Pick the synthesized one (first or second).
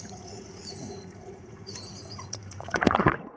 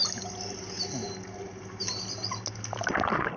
first